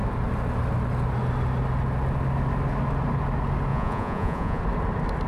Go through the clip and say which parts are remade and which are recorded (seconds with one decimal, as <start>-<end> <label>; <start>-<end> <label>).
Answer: 0.0-3.7 recorded; 3.7-4.6 remade; 4.6-5.3 recorded